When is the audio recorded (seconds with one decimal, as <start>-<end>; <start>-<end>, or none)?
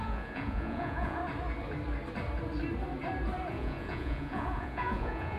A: 1.2-3.5